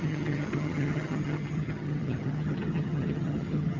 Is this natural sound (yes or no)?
no